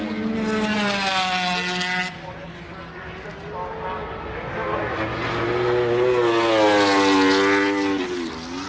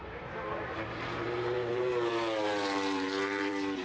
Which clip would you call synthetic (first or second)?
second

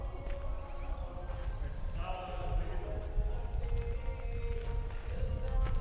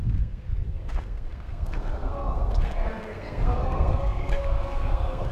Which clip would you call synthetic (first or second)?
second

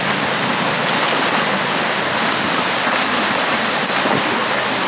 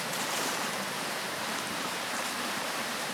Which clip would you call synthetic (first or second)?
second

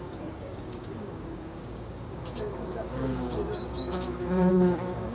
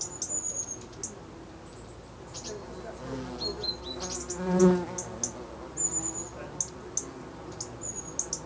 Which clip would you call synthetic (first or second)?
first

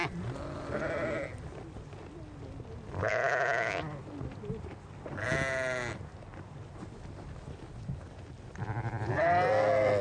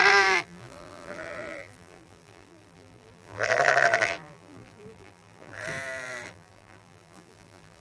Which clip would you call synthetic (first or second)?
second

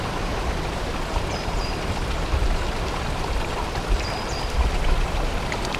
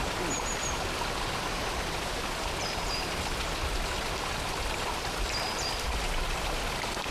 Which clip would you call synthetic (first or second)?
first